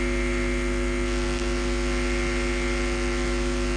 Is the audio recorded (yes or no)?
yes